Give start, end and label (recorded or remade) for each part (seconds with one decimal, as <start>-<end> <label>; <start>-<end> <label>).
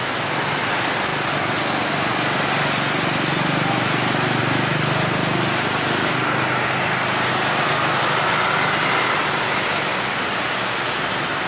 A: 0.0-11.5 recorded